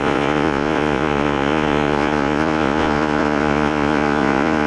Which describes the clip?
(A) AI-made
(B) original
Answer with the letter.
A